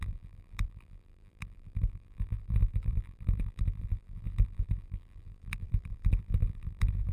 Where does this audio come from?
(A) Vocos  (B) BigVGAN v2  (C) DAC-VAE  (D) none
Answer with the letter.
B